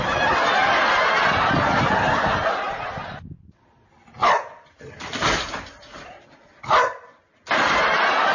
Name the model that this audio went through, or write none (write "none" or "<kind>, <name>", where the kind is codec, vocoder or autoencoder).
none